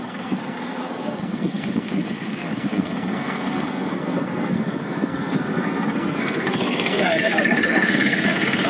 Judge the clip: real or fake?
fake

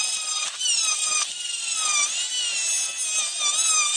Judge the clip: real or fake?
real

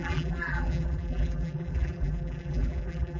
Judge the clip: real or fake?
fake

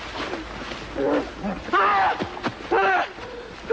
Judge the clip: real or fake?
real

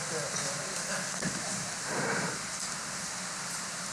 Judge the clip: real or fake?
real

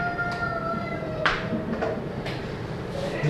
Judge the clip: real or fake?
fake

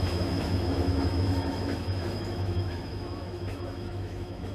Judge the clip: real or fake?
fake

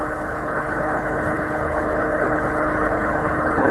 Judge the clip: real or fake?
fake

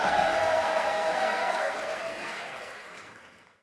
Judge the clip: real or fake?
fake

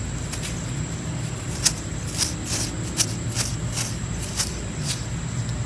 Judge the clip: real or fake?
real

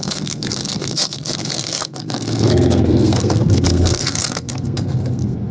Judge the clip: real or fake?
fake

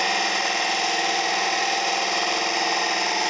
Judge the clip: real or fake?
fake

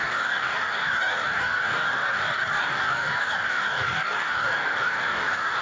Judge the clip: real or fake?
fake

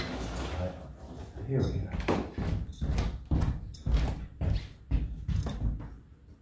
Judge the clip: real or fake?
real